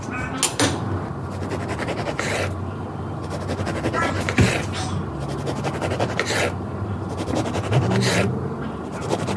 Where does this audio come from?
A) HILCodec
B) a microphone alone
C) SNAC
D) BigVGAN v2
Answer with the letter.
B